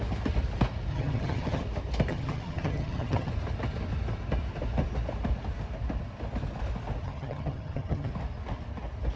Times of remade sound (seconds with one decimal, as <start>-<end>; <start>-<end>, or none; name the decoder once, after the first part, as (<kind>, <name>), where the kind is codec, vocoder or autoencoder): 0.9-1.6 (vocoder, HiFi-GAN); 2.1-3.3; 7.0-8.1